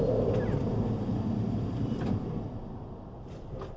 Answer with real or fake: real